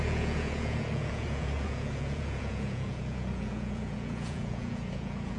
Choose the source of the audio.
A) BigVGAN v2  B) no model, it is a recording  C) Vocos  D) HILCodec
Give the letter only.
C